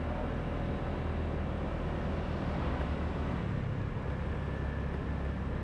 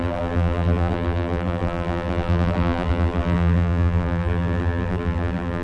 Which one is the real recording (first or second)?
first